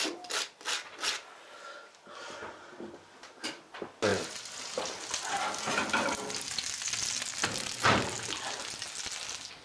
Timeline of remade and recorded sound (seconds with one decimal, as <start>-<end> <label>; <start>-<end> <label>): 0.0-9.6 recorded